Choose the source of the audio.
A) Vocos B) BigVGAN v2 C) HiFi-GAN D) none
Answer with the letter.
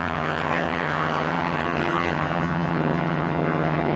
C